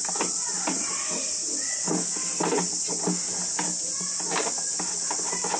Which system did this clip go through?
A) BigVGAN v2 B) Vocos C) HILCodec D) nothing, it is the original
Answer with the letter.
D